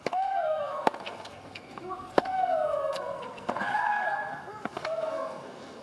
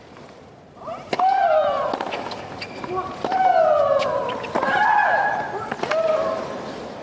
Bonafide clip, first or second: second